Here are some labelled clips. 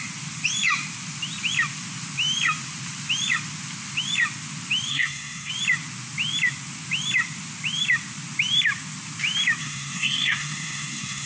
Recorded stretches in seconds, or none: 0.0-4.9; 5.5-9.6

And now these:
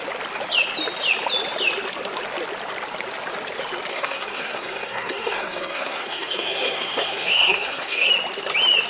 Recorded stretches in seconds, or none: 0.0-3.9; 8.1-8.9

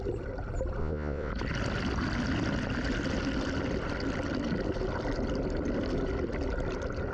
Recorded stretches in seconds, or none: 0.0-0.8; 1.3-7.1

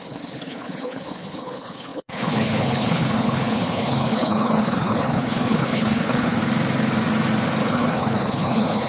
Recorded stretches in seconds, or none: 6.4-7.6

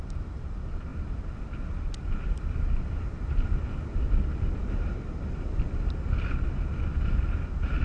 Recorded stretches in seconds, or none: 0.0-4.6; 5.3-7.8

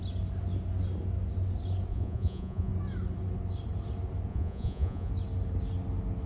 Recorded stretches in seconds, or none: 0.0-1.9; 2.7-4.3; 5.1-6.3

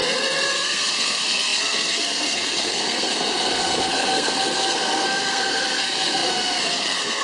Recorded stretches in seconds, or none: none

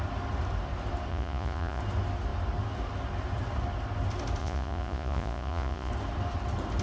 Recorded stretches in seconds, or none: 0.0-1.1; 1.8-4.4; 5.9-6.8